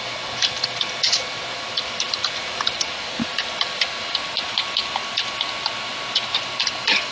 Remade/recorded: recorded